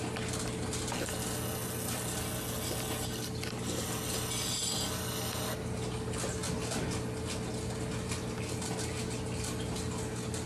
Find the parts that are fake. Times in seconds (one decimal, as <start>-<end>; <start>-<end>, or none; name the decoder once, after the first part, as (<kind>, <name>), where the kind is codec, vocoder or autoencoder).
none